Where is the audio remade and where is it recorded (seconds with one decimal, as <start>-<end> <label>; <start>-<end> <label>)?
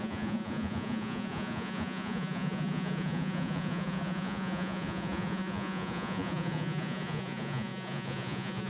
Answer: 0.0-8.7 remade